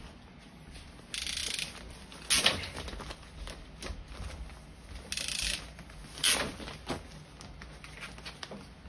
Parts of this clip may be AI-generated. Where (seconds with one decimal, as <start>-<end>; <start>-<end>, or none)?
none